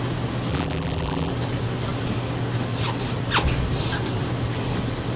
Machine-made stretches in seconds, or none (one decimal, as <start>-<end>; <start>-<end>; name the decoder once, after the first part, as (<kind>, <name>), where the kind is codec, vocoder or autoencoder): 0.5-1.3 (vocoder, BigVGAN v2)